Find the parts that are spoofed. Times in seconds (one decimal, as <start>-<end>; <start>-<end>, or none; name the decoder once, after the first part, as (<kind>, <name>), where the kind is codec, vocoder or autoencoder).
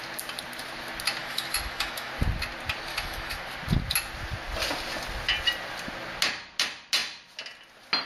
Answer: 1.2-2.1 (autoencoder, DAC-VAE); 2.9-3.4